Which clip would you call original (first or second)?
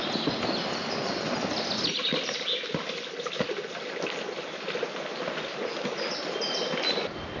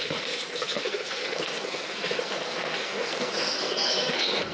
first